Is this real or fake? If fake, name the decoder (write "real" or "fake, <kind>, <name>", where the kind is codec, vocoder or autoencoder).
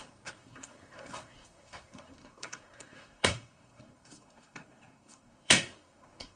fake, codec, SNAC